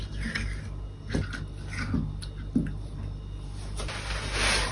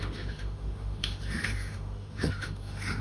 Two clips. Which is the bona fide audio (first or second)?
first